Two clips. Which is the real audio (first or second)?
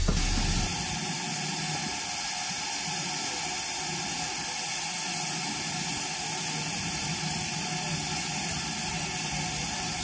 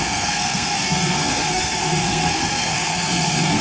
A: first